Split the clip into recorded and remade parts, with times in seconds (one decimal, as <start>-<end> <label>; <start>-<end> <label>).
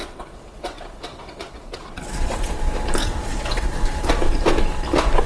0.0-2.5 remade; 2.5-3.0 recorded; 3.0-3.7 remade; 3.7-5.3 recorded